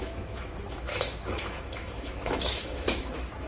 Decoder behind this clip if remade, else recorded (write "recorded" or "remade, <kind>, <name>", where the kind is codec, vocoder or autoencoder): remade, autoencoder, DAC-VAE